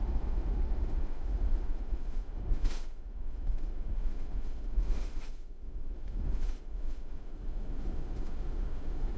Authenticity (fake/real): fake